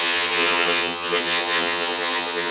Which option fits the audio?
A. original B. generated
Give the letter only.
B